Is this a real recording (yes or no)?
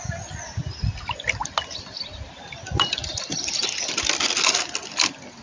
yes